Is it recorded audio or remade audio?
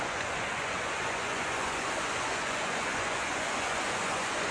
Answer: remade